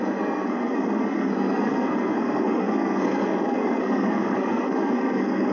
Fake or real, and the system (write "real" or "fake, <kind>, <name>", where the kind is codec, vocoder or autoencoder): fake, codec, SNAC